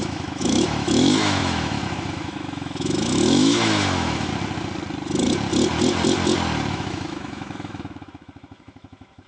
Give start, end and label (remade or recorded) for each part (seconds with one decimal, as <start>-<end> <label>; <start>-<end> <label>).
0.0-4.3 remade; 4.3-6.7 recorded; 6.7-9.3 remade